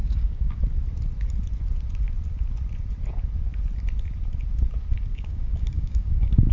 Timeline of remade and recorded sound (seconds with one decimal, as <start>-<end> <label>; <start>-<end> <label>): 0.0-0.6 remade; 0.6-5.1 recorded; 5.1-6.5 remade